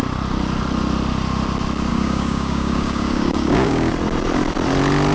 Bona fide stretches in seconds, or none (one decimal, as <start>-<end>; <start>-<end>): 0.0-1.9; 3.9-5.1